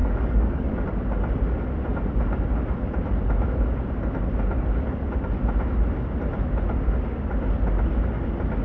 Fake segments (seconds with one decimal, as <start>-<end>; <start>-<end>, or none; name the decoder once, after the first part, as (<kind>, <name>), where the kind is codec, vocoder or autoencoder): 0.0-0.8 (codec, DAC)